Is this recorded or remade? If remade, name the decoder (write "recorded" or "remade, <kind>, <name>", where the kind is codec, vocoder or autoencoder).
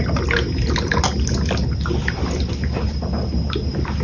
recorded